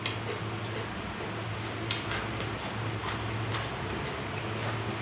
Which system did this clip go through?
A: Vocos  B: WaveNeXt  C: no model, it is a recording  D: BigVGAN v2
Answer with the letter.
C